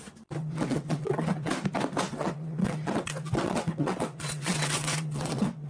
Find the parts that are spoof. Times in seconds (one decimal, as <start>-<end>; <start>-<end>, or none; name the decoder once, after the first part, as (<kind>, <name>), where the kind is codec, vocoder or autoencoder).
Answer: 0.4-1.5 (vocoder, WaveNeXt); 2.1-5.7